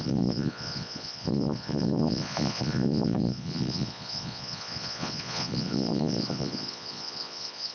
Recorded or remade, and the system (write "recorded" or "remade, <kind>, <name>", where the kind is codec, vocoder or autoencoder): remade, vocoder, Vocos